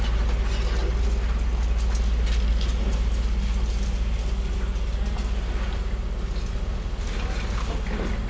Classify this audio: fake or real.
real